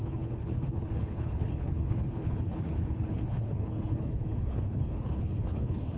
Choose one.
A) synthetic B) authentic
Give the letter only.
A